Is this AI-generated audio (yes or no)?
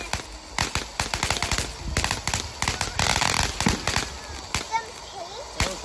no